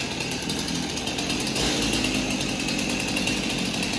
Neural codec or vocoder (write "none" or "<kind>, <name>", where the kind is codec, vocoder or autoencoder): none